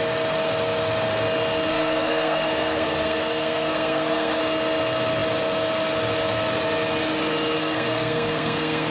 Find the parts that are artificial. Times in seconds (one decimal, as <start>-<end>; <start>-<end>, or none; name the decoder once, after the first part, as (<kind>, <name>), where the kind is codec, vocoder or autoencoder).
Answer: 1.7-4.4 (codec, SNAC); 7.6-8.9